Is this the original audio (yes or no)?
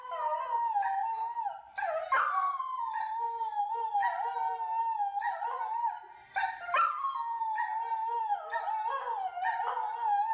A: yes